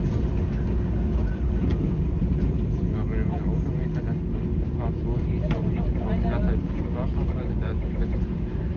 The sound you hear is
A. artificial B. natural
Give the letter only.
B